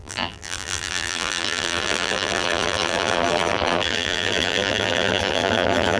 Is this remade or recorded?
remade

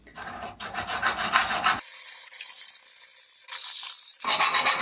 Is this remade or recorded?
recorded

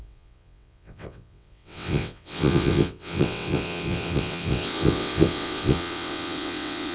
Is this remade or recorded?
remade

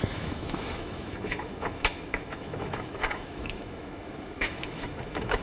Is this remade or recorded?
remade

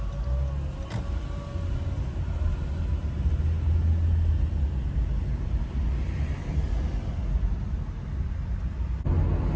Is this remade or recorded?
recorded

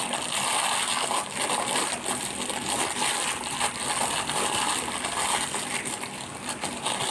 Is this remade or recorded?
recorded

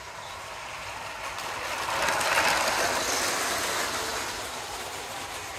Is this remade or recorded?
recorded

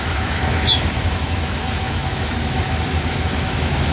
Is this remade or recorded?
remade